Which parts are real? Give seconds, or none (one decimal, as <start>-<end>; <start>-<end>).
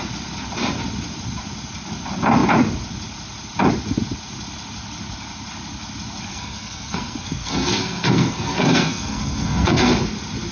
0.0-6.3; 9.9-10.5